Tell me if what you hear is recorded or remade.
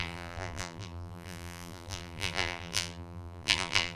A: remade